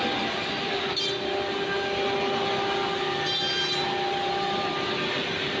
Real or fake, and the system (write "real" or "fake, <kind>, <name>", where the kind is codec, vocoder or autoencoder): real